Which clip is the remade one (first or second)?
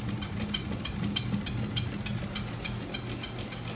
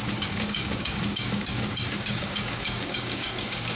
second